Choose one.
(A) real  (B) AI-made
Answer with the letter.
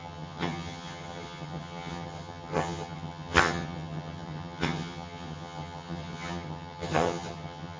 B